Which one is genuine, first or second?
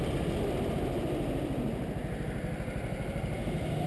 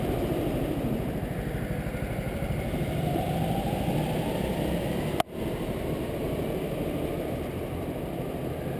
first